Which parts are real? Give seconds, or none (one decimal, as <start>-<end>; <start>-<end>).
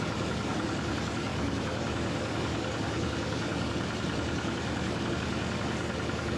none